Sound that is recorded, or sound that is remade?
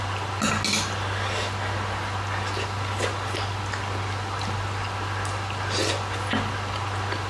recorded